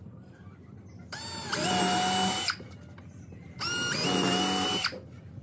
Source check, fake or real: real